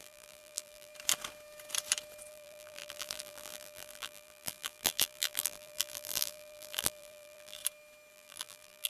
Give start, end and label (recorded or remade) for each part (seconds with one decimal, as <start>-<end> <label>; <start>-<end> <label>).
0.0-0.9 remade; 0.9-2.3 recorded; 2.3-7.6 remade; 7.6-8.1 recorded; 8.1-8.9 remade